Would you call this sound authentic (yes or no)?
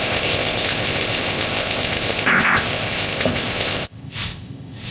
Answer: no